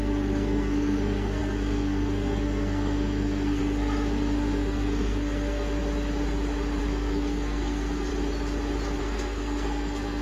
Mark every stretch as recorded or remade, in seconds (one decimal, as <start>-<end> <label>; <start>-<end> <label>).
0.0-5.8 remade; 5.8-6.8 recorded; 6.8-8.1 remade; 8.1-9.0 recorded; 9.0-10.2 remade